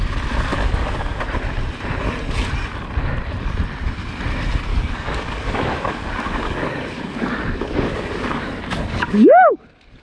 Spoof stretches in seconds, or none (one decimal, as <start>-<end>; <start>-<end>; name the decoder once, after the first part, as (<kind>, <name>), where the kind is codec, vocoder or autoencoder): 0.5-1.2 (codec, DAC); 4.7-9.6